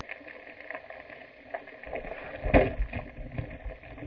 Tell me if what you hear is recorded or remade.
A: recorded